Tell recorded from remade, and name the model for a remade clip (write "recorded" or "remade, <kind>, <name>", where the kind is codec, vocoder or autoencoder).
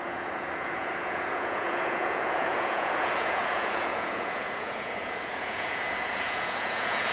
remade, vocoder, Vocos